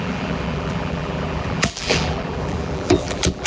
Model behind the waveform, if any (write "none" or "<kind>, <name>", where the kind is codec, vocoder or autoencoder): vocoder, BigVGAN v2